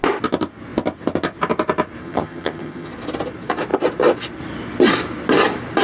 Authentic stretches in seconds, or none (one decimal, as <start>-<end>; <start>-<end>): 0.0-2.0; 2.9-5.8